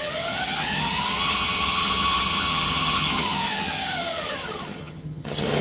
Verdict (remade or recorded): remade